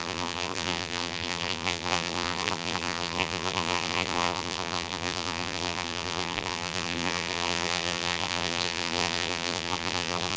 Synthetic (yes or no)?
yes